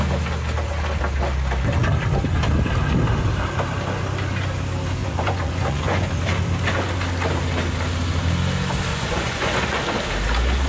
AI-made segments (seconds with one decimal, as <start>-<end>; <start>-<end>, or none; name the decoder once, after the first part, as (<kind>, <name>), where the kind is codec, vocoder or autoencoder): 5.0-6.1 (vocoder, Vocos); 8.9-9.8